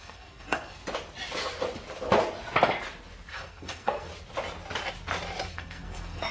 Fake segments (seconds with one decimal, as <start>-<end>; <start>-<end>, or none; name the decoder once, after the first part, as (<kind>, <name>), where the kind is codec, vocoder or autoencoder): 0.0-0.8 (codec, SNAC); 3.3-4.1; 5.5-6.3